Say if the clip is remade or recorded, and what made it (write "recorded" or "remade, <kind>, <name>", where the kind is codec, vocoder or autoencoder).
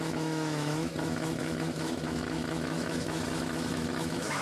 remade, autoencoder, DAC-VAE